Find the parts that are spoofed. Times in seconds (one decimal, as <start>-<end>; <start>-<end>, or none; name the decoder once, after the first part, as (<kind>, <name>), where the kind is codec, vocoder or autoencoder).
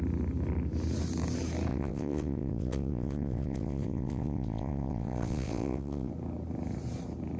1.7-6.1 (vocoder, WaveNeXt)